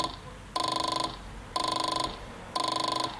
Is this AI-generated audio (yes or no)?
no